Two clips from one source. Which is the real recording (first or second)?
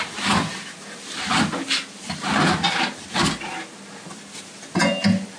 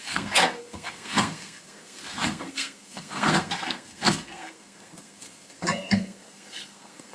first